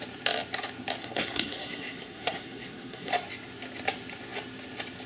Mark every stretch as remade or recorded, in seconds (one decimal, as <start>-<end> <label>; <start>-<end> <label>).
0.0-1.0 recorded; 1.0-3.1 remade; 3.1-5.1 recorded